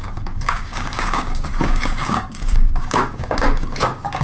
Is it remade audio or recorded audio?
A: remade